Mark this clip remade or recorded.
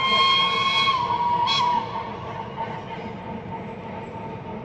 recorded